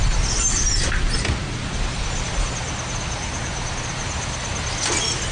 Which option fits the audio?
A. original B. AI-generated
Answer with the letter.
A